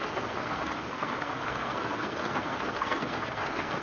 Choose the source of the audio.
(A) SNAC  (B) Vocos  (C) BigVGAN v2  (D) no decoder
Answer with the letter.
A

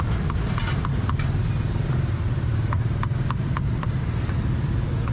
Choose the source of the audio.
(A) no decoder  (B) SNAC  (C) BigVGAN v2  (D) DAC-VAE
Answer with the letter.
A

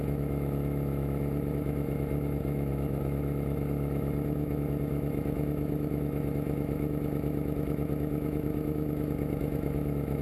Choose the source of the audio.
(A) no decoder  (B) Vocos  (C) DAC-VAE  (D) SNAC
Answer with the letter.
C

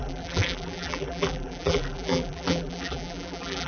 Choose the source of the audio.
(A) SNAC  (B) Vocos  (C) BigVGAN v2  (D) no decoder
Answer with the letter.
C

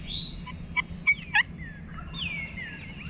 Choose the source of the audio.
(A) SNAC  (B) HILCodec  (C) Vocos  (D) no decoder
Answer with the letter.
D